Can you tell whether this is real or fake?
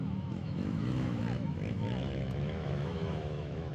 fake